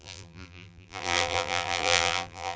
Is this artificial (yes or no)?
yes